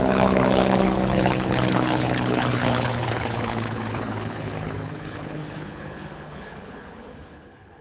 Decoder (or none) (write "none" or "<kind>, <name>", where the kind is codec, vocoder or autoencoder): codec, HILCodec